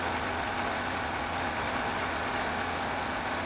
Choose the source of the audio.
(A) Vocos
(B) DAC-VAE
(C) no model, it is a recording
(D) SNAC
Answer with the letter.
C